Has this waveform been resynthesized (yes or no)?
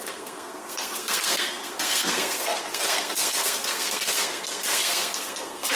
yes